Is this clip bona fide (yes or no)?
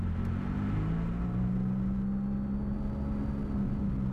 yes